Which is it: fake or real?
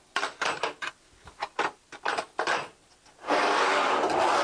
real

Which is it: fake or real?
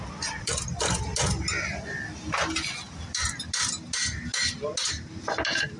real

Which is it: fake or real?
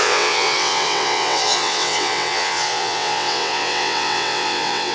fake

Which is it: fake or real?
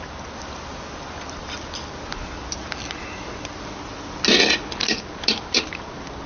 real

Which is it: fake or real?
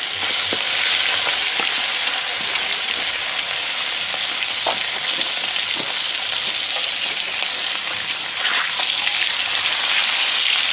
real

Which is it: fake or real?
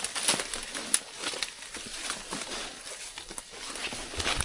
real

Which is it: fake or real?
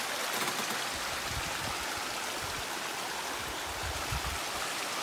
real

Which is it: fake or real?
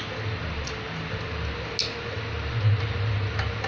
real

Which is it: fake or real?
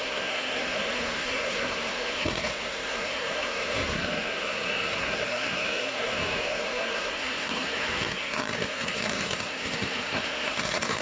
fake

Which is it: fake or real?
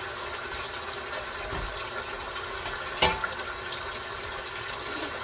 real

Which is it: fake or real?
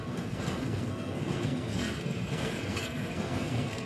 fake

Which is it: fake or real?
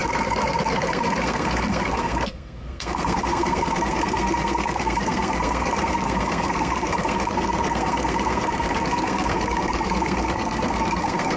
fake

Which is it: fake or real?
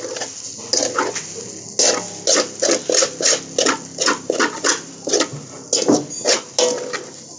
real